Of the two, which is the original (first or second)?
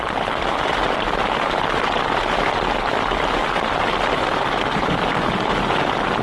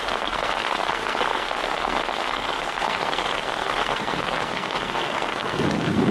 first